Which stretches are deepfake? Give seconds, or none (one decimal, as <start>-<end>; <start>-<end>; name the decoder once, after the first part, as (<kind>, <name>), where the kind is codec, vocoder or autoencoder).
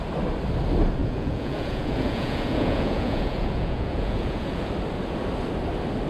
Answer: 1.0-4.7 (vocoder, Vocos)